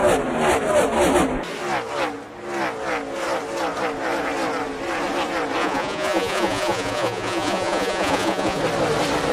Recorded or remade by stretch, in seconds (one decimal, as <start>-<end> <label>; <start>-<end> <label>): 0.0-5.6 recorded; 5.6-8.6 remade; 8.6-9.3 recorded